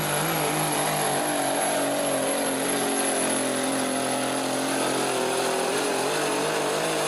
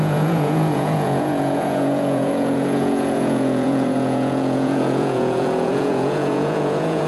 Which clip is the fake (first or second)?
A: second